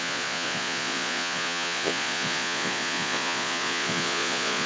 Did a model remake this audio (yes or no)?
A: yes